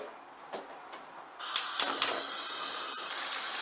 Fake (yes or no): no